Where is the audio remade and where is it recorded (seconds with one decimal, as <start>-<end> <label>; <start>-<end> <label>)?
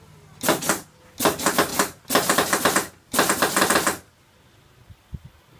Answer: 0.0-5.6 recorded